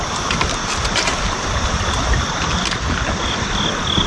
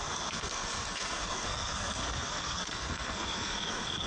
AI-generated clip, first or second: second